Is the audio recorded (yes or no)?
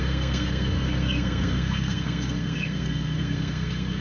no